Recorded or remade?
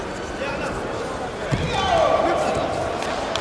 remade